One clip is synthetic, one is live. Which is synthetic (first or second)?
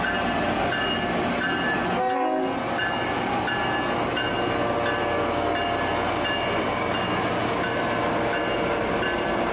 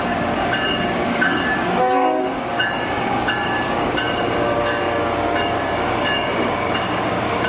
second